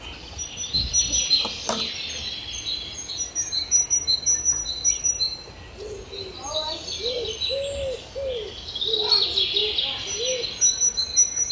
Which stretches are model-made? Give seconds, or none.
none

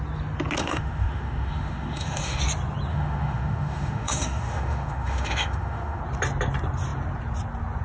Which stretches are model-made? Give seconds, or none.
0.6-2.4 (autoencoder, DAC-VAE); 2.9-6.0

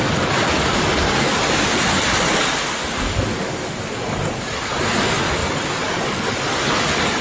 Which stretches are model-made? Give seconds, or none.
none

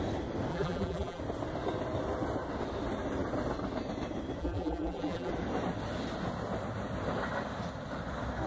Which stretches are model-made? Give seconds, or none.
0.5-1.2 (vocoder, BigVGAN v2); 4.4-5.3

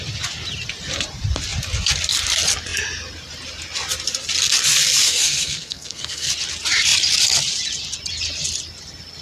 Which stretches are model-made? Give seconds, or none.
5.0-6.3 (codec, SNAC)

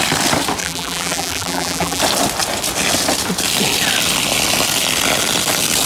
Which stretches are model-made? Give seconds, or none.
0.6-2.0 (vocoder, BigVGAN v2)

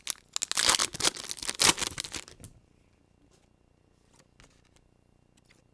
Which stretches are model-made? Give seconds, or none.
none

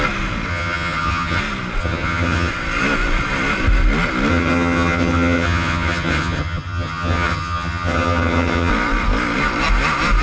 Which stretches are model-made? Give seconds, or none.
0.5-1.4 (vocoder, HiFi-GAN); 1.8-2.5; 4.3-8.7